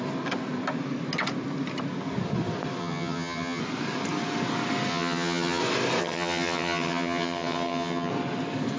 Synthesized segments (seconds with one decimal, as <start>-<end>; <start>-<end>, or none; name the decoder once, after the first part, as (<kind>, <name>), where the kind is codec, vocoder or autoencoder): 2.8-3.6 (vocoder, HiFi-GAN); 4.9-5.6; 6.0-8.1